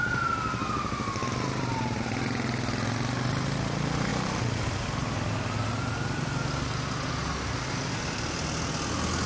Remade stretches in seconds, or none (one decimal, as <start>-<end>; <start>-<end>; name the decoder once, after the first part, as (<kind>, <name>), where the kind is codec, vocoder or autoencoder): none

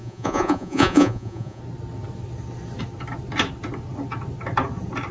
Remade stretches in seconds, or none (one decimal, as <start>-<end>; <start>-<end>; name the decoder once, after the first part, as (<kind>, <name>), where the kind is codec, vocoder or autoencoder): 0.0-1.6 (vocoder, Vocos)

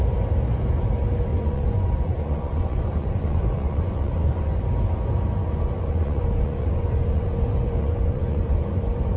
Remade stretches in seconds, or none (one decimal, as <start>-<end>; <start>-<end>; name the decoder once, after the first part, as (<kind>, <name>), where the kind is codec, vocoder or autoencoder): 1.3-4.6 (vocoder, Vocos); 5.4-9.2

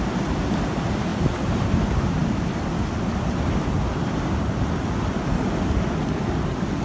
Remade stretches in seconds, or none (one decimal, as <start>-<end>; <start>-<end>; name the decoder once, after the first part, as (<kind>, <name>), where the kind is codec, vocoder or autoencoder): none

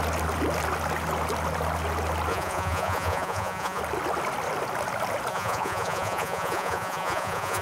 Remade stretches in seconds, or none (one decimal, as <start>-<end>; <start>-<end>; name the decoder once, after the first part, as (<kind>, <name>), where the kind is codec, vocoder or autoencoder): 2.3-3.8 (vocoder, Vocos); 5.3-7.6